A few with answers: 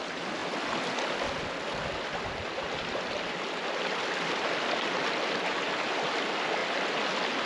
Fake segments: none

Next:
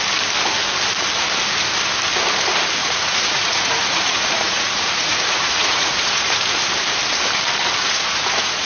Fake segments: 2.8-6.6 (vocoder, Vocos); 7.8-8.7

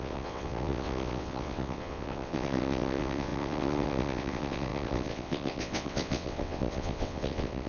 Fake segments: 0.0-7.7 (vocoder, WaveNeXt)

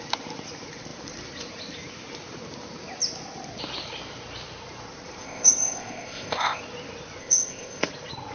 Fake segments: 5.2-6.6 (codec, ZipCodec); 7.2-7.8

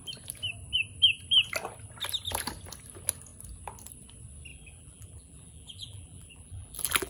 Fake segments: 4.5-7.1 (vocoder, BigVGAN v2)

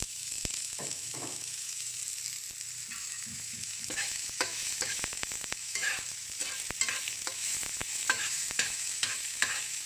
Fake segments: 0.0-2.0 (autoencoder, DAC-VAE); 3.0-6.4; 7.1-9.9

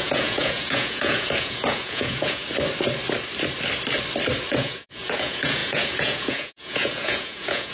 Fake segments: 0.0-2.4 (vocoder, Vocos); 4.5-7.7